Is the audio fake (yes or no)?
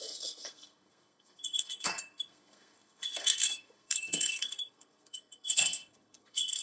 yes